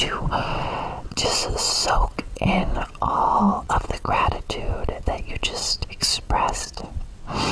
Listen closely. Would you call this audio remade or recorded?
remade